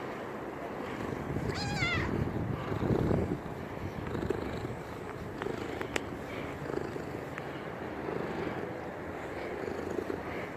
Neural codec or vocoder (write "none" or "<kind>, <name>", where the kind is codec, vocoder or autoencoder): none